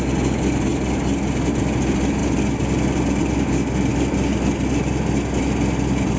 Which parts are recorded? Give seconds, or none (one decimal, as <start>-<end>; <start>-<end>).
0.0-6.2